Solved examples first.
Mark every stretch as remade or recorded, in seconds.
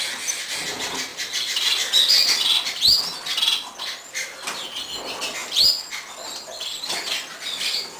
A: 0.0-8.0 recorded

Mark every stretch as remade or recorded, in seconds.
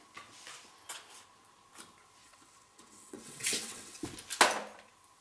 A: 0.0-2.2 recorded; 2.2-4.0 remade; 4.0-5.2 recorded